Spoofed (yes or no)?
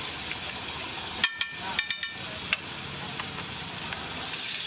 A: no